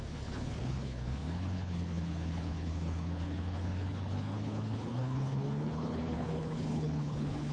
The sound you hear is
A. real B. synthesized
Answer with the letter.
B